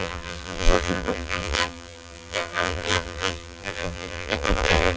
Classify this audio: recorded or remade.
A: remade